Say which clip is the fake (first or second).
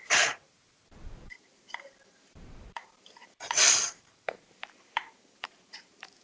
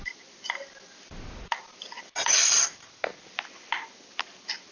first